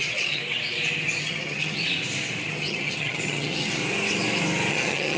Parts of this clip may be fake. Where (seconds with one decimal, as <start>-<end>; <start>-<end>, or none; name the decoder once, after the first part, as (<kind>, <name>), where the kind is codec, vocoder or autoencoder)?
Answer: 0.0-0.4 (vocoder, HiFi-GAN); 1.2-1.8; 2.5-3.8; 4.7-5.2